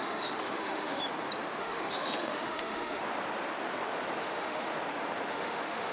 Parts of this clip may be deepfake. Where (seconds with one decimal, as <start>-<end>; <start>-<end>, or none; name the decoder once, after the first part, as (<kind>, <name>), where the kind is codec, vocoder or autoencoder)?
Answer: 0.0-1.0 (autoencoder, DAC-VAE); 1.6-3.0; 4.2-4.7; 5.3-5.9